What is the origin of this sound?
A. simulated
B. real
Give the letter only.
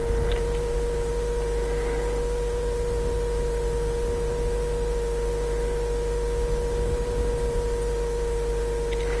B